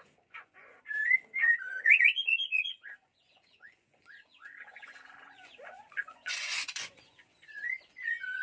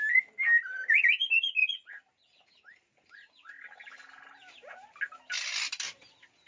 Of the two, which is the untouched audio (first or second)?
second